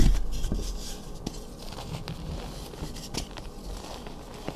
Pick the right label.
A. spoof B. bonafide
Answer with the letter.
B